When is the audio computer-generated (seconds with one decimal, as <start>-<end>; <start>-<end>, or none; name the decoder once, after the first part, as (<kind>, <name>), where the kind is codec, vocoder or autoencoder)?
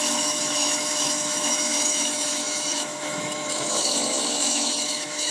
0.0-5.3 (autoencoder, DAC-VAE)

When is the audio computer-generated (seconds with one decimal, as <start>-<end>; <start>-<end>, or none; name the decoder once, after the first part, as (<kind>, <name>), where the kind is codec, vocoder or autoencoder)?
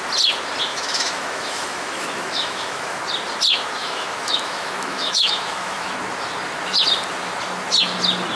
0.7-3.0 (autoencoder, DAC-VAE); 3.8-5.9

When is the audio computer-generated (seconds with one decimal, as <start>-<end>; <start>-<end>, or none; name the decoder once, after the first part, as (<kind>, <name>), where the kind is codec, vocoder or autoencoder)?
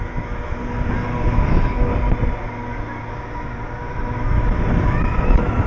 0.0-0.6 (autoencoder, DAC-VAE); 1.2-1.9; 3.9-5.7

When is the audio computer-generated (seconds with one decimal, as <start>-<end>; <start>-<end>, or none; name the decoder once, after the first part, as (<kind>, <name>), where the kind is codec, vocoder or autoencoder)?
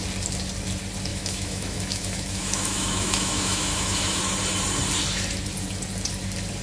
1.1-4.2 (autoencoder, DAC-VAE)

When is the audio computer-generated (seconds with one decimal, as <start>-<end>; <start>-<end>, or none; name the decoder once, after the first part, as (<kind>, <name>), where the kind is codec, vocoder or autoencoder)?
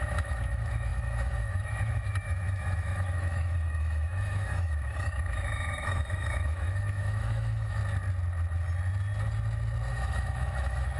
0.0-7.8 (autoencoder, DAC-VAE); 9.9-11.0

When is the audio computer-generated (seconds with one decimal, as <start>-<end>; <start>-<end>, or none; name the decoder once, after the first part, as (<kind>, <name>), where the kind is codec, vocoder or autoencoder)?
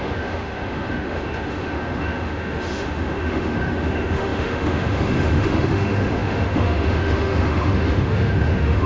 0.0-8.9 (autoencoder, DAC-VAE)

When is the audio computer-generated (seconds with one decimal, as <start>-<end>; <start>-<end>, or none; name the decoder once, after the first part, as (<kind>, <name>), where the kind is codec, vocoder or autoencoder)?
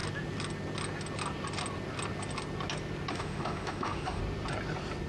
3.1-4.2 (autoencoder, DAC-VAE)